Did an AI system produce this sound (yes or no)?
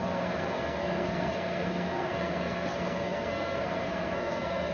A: yes